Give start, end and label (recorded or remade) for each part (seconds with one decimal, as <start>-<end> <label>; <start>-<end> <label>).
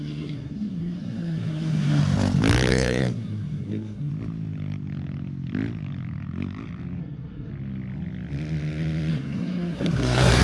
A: 0.0-2.0 remade; 2.0-2.7 recorded; 2.7-4.1 remade; 4.1-7.0 recorded; 7.0-7.5 remade; 7.5-9.1 recorded; 9.1-10.4 remade